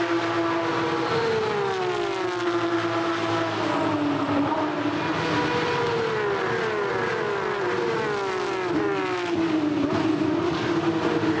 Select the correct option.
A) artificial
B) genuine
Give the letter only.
B